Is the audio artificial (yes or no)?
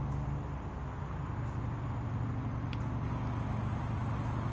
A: no